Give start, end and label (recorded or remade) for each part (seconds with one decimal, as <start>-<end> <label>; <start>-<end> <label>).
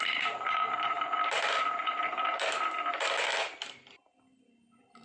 0.0-5.0 recorded